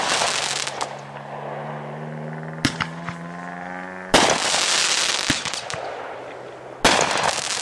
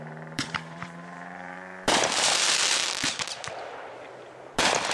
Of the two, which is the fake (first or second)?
second